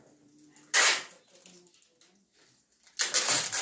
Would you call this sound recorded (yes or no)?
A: yes